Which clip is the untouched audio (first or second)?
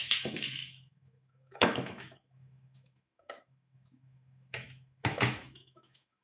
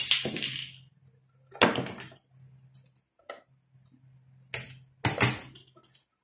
second